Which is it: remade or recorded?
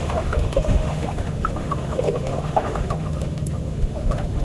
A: remade